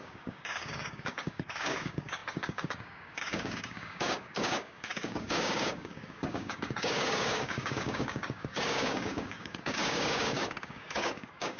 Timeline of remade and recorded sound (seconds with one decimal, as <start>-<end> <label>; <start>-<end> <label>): 0.0-11.6 remade